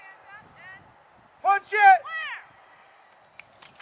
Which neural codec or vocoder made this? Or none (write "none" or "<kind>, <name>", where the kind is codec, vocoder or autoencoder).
none